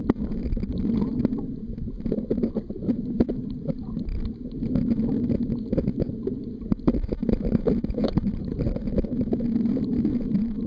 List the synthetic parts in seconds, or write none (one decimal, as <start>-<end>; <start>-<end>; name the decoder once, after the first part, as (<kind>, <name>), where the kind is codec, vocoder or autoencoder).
0.0-4.1 (vocoder, BigVGAN v2); 5.2-10.7